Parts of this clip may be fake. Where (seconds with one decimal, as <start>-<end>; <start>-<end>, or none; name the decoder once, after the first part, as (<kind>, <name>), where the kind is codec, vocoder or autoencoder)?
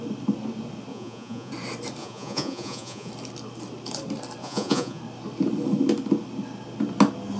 0.9-1.5 (vocoder, Vocos); 2.0-3.1; 4.4-5.0